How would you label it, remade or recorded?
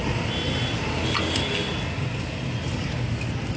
recorded